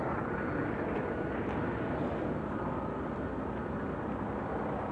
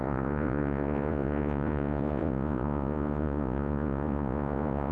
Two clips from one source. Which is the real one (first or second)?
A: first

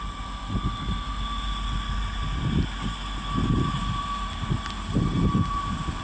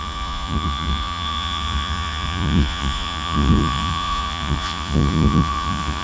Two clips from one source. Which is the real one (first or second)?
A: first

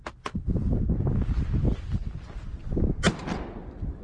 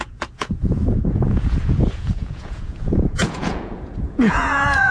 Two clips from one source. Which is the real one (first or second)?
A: first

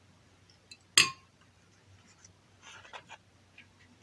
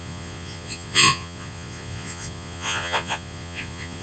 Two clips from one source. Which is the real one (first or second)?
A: first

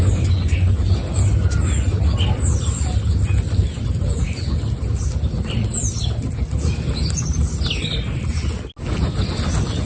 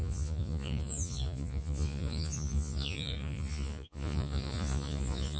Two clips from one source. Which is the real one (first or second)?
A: first